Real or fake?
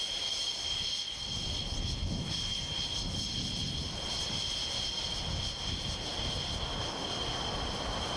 real